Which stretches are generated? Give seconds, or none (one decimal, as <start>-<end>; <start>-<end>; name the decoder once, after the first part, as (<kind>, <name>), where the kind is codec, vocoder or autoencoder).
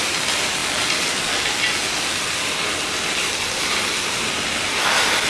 none